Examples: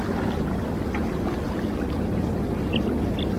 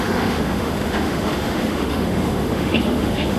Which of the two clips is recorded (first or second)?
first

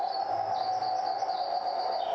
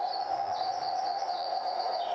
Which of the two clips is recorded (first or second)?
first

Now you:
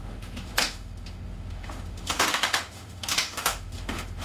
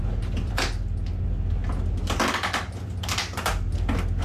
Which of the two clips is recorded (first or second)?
second